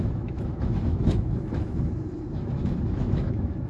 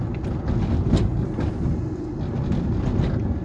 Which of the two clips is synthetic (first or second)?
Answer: first